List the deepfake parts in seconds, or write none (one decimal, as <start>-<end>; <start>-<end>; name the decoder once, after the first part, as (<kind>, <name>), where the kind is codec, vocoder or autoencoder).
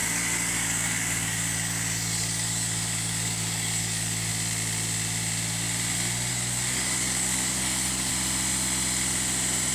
0.0-4.3 (codec, DAC); 6.3-8.1